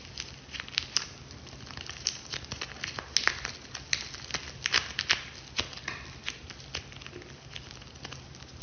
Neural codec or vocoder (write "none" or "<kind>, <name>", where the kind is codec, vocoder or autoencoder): none